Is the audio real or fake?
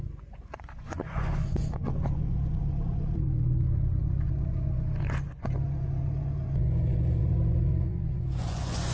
fake